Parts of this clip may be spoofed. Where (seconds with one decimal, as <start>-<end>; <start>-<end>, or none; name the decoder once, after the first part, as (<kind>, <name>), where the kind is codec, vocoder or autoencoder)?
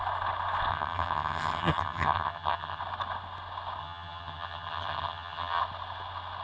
0.7-2.8 (vocoder, HiFi-GAN); 3.8-5.6